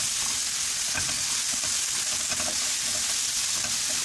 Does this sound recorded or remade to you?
recorded